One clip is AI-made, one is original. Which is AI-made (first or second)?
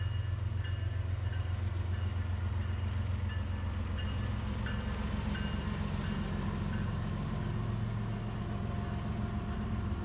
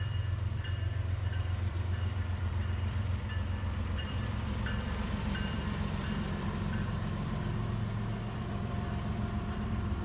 second